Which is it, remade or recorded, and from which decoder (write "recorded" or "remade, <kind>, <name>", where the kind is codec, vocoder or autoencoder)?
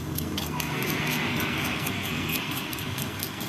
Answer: remade, codec, SNAC